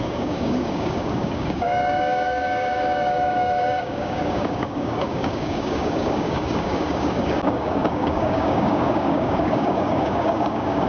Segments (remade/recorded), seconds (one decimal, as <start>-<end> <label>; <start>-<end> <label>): 0.0-10.9 remade

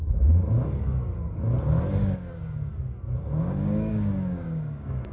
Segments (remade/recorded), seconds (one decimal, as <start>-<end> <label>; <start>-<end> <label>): 0.0-1.9 recorded; 1.9-2.7 remade; 2.7-3.4 recorded; 3.4-5.1 remade